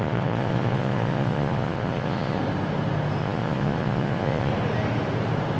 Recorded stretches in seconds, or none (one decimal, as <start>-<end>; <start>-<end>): 2.4-3.2; 4.5-5.6